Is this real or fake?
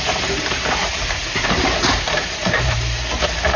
fake